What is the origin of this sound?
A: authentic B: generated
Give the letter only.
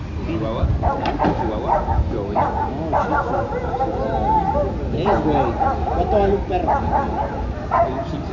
A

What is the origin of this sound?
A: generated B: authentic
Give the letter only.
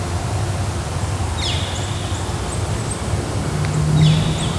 B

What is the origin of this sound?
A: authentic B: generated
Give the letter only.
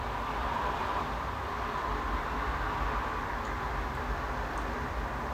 B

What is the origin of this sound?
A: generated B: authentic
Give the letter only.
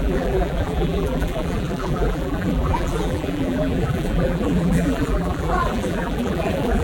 A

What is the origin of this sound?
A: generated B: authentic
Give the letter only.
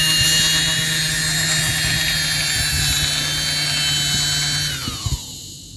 B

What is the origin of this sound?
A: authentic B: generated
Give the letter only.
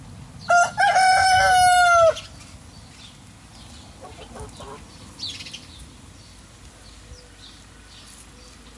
A